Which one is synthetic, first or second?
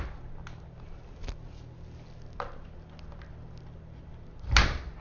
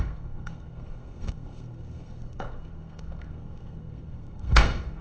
second